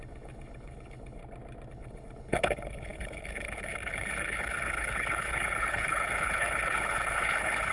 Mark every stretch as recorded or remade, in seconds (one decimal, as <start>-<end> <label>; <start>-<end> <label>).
0.0-1.2 remade; 1.2-1.7 recorded; 1.7-7.7 remade